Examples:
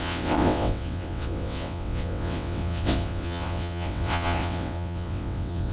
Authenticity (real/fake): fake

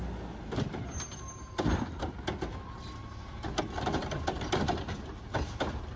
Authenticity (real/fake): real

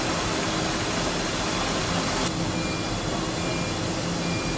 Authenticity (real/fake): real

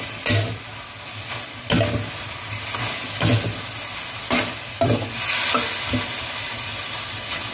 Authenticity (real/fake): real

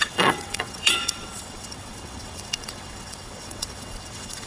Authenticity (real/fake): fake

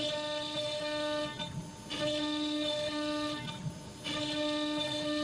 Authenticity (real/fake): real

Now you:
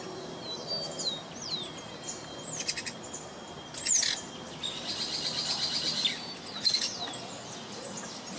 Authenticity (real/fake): real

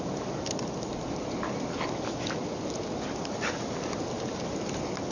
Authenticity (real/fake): real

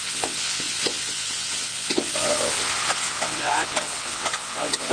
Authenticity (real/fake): fake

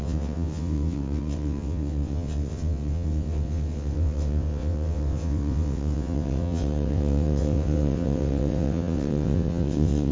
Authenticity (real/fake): fake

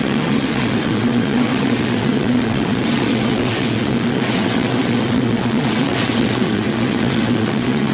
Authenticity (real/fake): fake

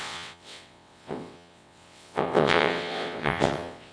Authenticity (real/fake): fake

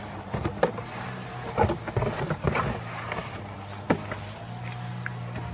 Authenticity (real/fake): real